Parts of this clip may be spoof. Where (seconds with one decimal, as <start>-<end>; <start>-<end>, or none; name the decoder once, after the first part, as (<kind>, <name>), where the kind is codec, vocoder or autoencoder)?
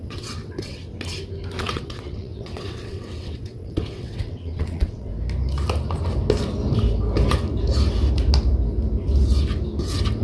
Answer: 0.0-0.8 (vocoder, WaveNeXt); 1.6-5.1